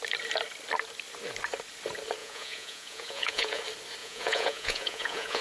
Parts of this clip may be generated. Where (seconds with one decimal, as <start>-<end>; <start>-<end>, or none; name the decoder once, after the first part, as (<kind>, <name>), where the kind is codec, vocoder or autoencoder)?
2.2-3.6 (vocoder, Vocos); 4.0-5.4